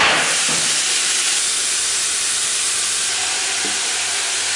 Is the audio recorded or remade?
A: recorded